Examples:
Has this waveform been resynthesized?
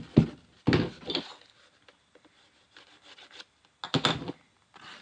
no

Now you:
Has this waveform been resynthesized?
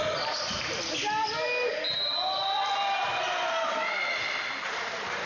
no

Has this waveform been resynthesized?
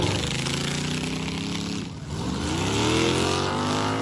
no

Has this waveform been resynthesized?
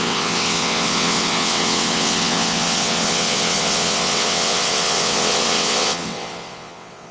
yes